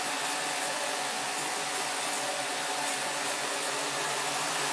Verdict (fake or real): fake